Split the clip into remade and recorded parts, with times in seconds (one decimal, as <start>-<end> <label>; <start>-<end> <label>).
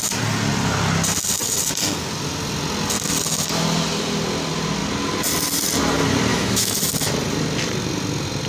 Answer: 0.0-6.3 recorded; 6.3-6.8 remade; 6.8-8.5 recorded